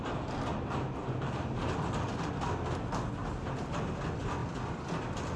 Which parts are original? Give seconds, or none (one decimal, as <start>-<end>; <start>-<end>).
0.0-1.0; 2.3-3.2; 4.0-5.4